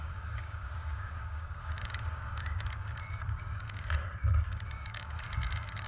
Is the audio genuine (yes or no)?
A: no